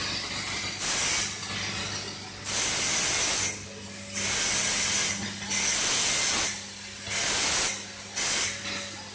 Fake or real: real